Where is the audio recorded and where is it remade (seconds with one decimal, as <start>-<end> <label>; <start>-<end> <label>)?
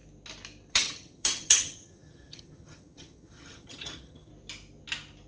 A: 0.0-0.7 recorded; 0.7-4.3 remade; 4.3-5.3 recorded